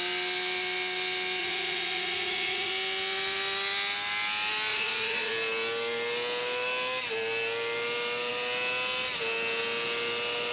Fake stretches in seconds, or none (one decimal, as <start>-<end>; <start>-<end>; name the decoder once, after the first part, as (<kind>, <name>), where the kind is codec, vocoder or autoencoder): 1.4-2.7 (vocoder, Vocos); 4.7-5.3

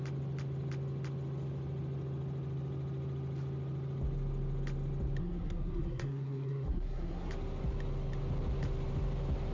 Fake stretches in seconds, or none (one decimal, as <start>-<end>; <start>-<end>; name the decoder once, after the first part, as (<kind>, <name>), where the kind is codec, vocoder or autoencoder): 5.2-7.3 (codec, SNAC)

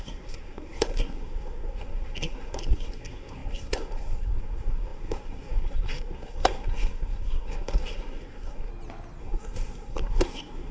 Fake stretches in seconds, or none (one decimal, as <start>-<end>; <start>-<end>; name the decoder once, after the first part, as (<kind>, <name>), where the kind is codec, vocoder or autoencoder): 0.0-8.7 (codec, SNAC); 9.2-10.7

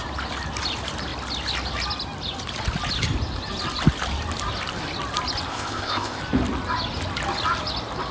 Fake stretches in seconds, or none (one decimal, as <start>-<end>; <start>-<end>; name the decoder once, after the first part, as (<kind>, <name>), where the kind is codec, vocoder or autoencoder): 5.5-6.2 (codec, ZipCodec)